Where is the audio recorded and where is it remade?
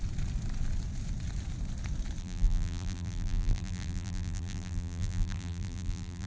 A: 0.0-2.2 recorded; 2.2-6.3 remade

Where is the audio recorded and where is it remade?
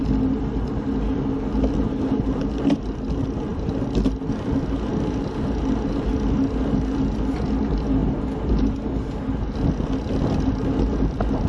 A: 0.0-11.5 recorded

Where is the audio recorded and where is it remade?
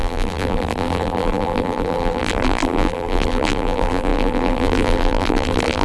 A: 0.0-5.8 remade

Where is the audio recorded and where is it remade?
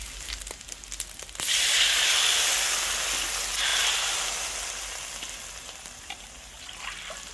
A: 0.0-7.3 recorded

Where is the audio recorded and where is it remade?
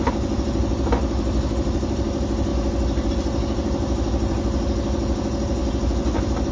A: 0.0-6.5 recorded